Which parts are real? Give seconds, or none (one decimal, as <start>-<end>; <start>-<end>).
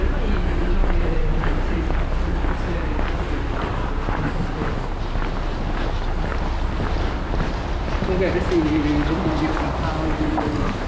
0.0-0.6; 1.2-6.3; 8.0-10.9